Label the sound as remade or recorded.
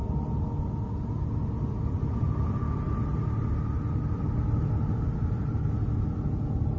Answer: recorded